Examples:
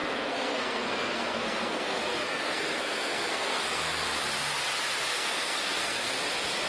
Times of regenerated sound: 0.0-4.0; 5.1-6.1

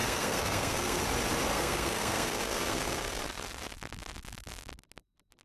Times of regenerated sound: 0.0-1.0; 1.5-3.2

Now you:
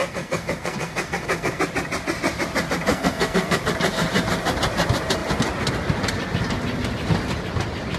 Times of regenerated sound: 0.0-1.6; 2.9-3.6